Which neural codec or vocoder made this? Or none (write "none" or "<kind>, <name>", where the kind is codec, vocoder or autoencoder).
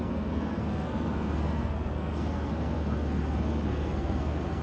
codec, SNAC